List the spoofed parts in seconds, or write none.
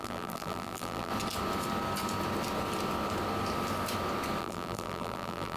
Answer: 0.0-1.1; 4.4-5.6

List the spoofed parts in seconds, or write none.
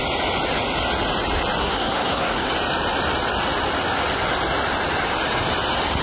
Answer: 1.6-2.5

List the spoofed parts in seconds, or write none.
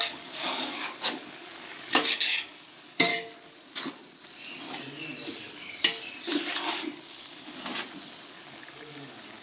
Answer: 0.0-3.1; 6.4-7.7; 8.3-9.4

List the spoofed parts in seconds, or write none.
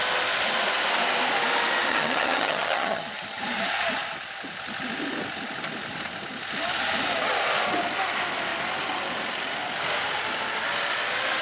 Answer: 1.9-3.4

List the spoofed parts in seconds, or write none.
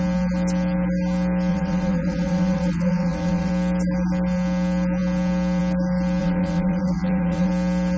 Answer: 1.5-3.5; 6.2-7.5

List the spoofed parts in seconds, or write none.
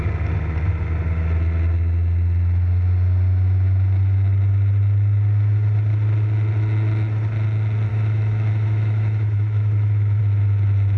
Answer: 7.9-10.2